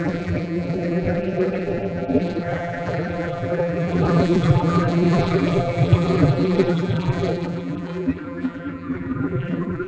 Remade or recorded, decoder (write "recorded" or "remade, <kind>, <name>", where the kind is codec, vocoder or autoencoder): remade, vocoder, BigVGAN v2